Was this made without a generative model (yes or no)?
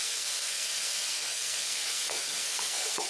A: no